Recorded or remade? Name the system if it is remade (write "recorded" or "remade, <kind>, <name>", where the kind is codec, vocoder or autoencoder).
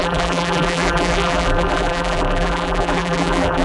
remade, vocoder, BigVGAN v2